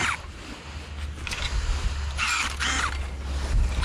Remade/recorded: recorded